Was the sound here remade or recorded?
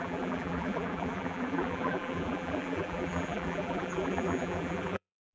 remade